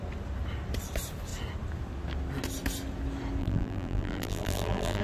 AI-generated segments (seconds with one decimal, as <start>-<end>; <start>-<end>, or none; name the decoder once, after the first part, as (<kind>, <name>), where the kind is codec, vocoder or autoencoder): 3.4-5.0 (vocoder, BigVGAN v2)